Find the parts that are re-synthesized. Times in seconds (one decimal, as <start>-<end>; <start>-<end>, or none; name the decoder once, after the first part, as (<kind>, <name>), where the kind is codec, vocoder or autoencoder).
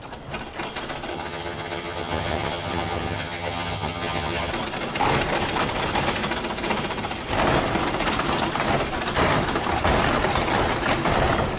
1.1-4.5 (vocoder, HiFi-GAN)